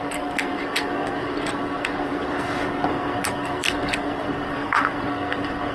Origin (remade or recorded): remade